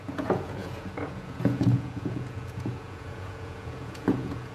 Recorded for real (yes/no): no